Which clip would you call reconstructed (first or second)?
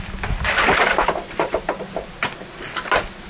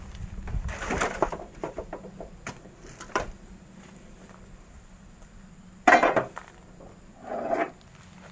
second